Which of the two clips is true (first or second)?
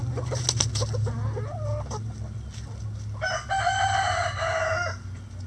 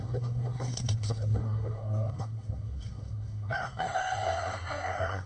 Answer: first